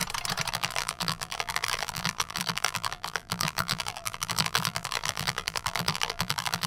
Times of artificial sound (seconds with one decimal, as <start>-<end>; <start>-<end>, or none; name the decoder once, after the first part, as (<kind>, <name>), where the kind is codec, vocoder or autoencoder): 0.5-6.7 (vocoder, BigVGAN v2)